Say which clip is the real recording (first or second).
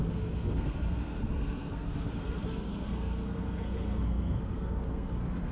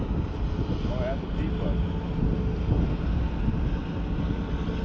second